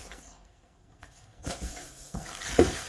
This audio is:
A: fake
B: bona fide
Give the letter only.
A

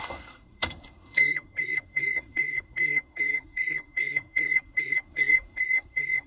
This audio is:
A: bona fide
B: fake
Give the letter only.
B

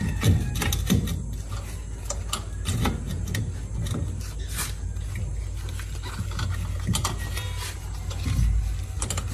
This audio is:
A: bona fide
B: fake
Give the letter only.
A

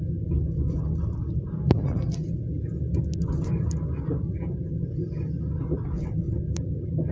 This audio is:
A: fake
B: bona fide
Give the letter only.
B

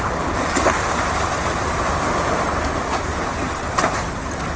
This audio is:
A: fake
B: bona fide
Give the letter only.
B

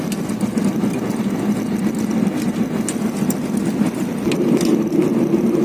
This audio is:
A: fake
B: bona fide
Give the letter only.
B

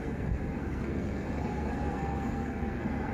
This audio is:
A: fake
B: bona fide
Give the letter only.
A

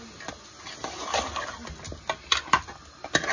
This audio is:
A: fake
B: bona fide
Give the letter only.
B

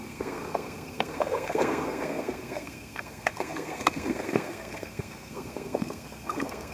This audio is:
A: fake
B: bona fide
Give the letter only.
A